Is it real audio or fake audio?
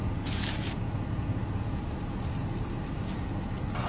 real